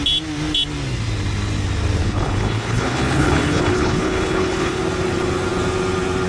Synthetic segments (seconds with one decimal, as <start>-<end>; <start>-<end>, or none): 2.0-4.8